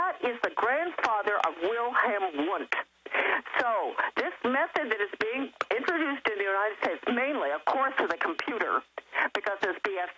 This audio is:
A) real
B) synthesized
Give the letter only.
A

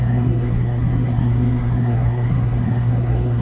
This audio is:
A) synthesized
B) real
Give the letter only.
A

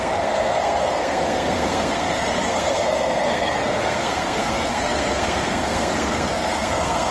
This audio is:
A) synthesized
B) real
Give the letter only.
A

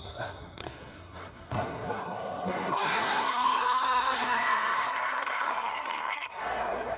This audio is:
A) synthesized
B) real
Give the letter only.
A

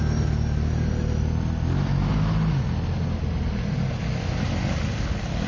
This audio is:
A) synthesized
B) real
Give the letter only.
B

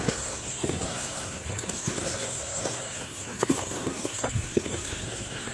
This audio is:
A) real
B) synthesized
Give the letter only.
B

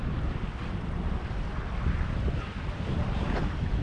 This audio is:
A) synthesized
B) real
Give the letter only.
B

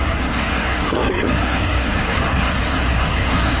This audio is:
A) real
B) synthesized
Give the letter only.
B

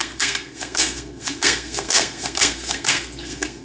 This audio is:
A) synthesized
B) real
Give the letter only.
A